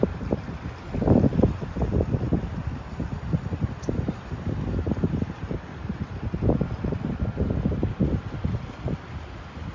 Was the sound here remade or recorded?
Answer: recorded